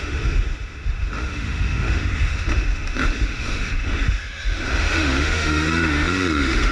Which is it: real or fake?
fake